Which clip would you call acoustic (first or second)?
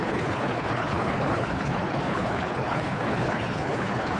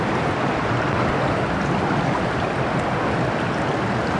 second